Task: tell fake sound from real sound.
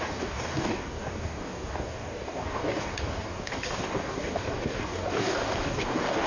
fake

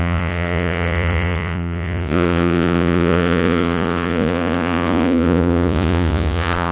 fake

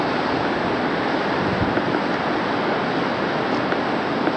real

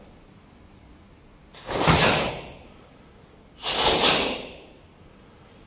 real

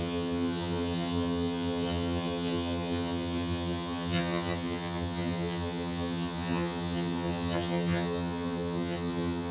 fake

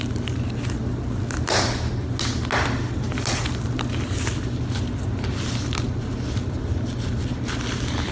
real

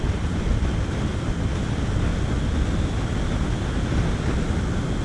real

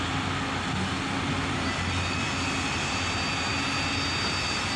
real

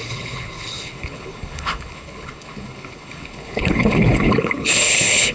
fake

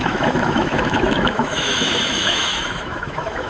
fake